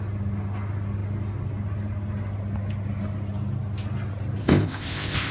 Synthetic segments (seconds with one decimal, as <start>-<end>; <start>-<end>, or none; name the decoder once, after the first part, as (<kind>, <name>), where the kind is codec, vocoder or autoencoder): 4.4-5.3 (codec, ZipCodec)